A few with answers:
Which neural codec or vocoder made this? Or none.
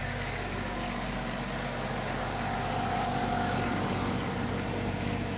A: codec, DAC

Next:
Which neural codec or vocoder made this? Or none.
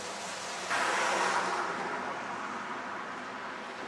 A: none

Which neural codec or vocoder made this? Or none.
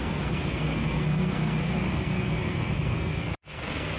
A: codec, SNAC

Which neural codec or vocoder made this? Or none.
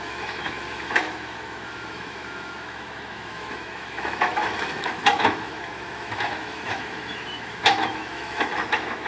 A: autoencoder, DAC-VAE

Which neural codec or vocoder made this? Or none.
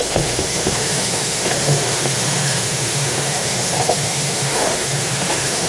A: autoencoder, DAC-VAE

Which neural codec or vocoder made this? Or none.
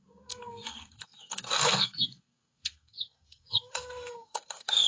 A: codec, SNAC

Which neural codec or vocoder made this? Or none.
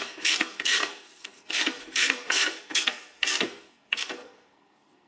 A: codec, SNAC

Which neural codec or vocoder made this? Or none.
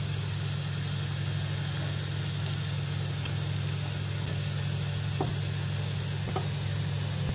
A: none